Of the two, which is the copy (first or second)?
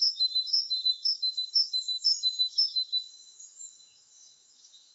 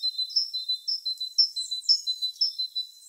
first